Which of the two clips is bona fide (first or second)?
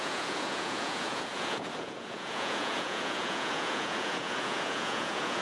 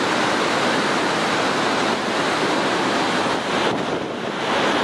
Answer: second